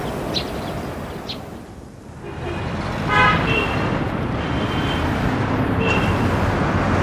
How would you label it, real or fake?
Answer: real